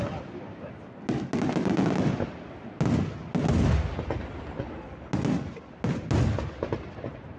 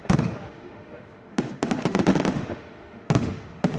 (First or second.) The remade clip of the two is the second